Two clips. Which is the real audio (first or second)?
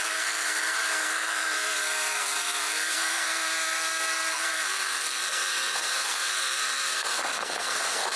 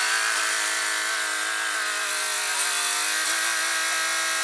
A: second